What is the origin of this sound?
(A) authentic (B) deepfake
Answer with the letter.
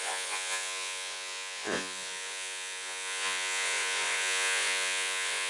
B